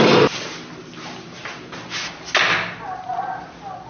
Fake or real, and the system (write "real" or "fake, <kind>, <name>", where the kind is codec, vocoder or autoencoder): real